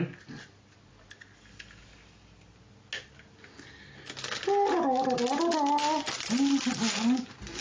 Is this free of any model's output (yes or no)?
yes